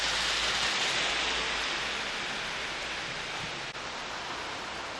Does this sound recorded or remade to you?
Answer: recorded